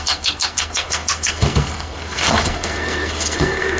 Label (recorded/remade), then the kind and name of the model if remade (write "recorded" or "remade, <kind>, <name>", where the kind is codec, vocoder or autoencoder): remade, codec, SNAC